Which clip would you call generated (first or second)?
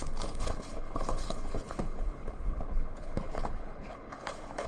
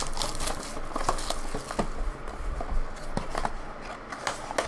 first